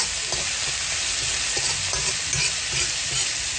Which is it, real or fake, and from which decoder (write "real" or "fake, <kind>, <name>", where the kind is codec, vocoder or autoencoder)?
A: real